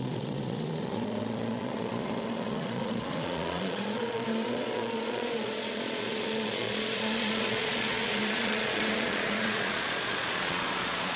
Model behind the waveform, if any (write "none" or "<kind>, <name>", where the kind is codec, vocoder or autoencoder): vocoder, Vocos